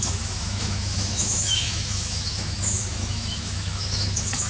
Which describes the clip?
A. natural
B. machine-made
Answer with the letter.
B